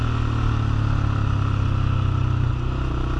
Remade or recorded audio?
recorded